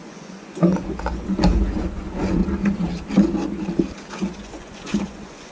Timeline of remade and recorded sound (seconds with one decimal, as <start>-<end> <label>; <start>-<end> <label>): 0.0-2.4 remade; 2.4-4.1 recorded; 4.1-5.5 remade